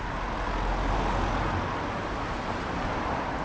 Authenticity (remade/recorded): recorded